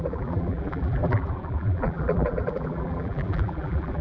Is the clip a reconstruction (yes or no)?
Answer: yes